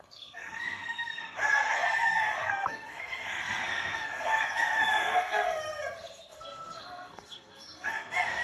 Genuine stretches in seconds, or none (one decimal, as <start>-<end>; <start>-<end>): none